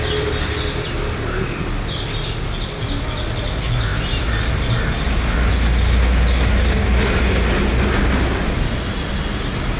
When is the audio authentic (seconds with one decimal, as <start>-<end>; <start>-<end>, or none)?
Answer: 0.0-7.7; 9.1-9.8